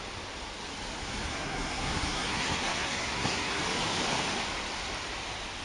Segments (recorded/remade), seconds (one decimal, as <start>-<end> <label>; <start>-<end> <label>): 0.0-1.3 recorded; 1.3-3.6 remade; 3.6-5.6 recorded